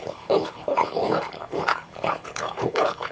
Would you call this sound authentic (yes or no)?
no